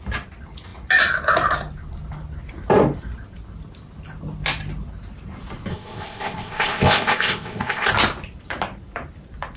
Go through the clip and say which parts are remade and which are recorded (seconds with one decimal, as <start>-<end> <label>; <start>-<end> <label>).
0.0-5.7 recorded; 5.7-7.9 remade; 7.9-9.6 recorded